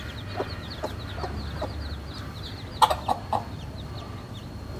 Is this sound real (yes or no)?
yes